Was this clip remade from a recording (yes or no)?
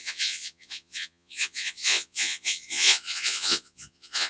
yes